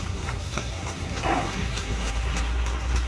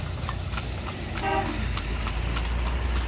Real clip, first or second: second